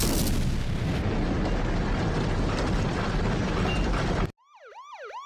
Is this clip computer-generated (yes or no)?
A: no